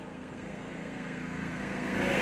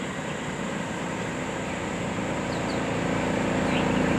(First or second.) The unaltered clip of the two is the second